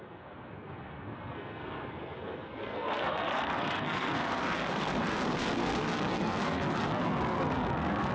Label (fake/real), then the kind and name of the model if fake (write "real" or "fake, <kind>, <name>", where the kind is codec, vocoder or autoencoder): fake, codec, SNAC